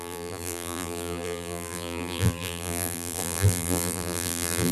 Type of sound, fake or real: fake